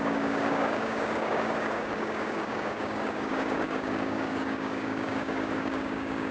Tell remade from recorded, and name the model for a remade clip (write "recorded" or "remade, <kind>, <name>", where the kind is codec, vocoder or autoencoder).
remade, codec, DAC